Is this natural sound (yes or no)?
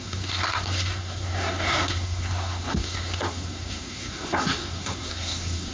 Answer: no